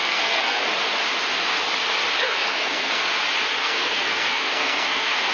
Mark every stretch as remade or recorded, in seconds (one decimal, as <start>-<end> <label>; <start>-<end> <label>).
0.0-0.6 remade; 0.6-2.2 recorded; 2.2-3.1 remade; 3.1-3.6 recorded; 3.6-5.3 remade

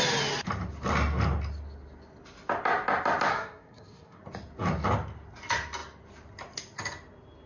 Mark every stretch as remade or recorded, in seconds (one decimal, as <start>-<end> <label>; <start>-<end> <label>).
0.0-3.3 recorded; 3.3-4.2 remade; 4.2-7.5 recorded

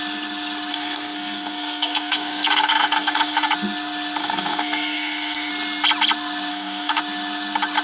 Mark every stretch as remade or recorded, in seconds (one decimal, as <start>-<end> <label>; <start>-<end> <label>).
0.0-0.7 recorded; 0.7-3.5 remade; 3.5-4.2 recorded; 4.2-5.5 remade; 5.5-6.5 recorded; 6.5-7.0 remade; 7.0-7.8 recorded